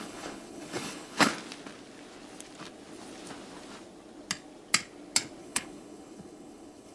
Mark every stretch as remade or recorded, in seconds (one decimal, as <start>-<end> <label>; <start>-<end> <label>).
0.0-1.3 remade; 1.3-5.4 recorded; 5.4-6.9 remade

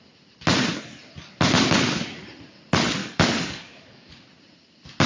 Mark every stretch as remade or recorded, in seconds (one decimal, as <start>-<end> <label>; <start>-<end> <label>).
0.0-3.0 recorded; 3.0-4.1 remade; 4.1-5.1 recorded

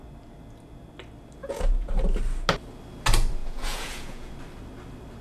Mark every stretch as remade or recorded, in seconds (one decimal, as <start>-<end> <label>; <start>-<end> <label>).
0.0-1.4 recorded; 1.4-1.9 remade; 1.9-3.4 recorded; 3.4-4.3 remade; 4.3-5.2 recorded

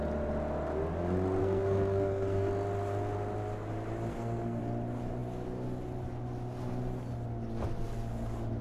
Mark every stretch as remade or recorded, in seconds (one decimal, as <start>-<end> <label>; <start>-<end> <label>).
0.0-1.4 recorded; 1.4-2.5 remade; 2.5-4.1 recorded; 4.1-4.6 remade; 4.6-8.6 recorded

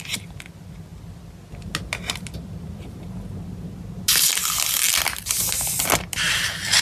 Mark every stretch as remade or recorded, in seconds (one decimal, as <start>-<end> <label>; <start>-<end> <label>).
0.0-6.8 recorded